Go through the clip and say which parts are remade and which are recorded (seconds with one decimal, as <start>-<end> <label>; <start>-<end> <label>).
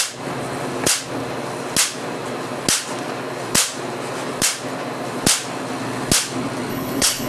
0.0-6.7 recorded; 6.7-7.3 remade